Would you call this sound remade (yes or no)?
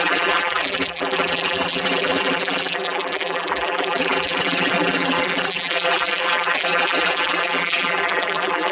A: yes